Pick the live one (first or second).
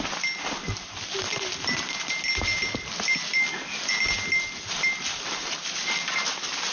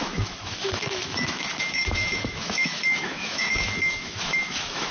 first